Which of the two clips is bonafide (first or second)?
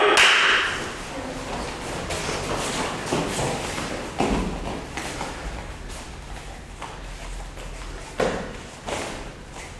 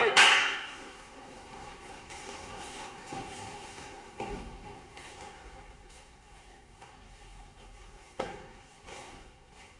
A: first